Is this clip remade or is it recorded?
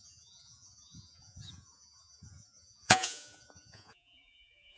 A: remade